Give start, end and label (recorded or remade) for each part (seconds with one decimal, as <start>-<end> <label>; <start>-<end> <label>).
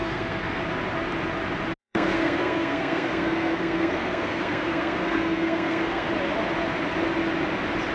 0.0-0.6 remade; 0.6-1.8 recorded; 1.8-6.1 remade; 6.1-7.9 recorded